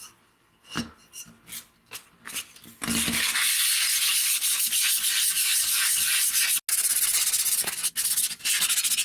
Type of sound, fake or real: real